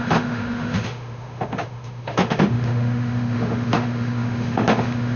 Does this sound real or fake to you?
fake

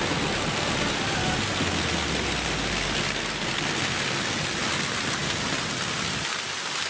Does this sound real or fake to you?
real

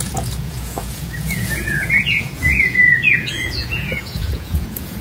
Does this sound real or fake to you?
fake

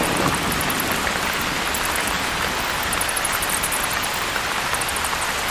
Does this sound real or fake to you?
real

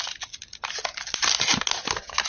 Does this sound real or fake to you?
real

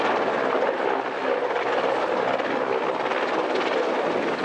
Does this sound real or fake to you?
real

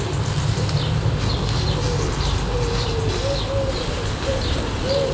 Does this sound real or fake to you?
real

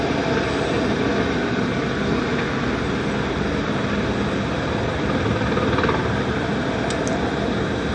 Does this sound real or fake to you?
real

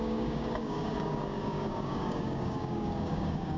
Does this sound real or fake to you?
fake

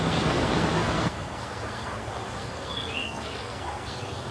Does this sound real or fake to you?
fake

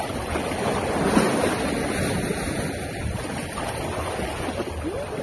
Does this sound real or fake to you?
real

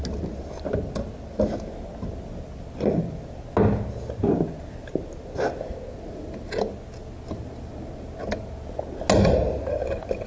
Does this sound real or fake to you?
real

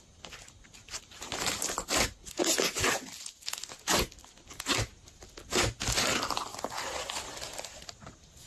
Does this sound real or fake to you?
real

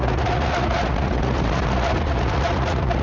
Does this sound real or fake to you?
fake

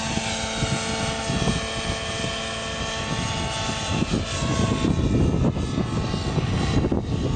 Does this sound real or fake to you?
real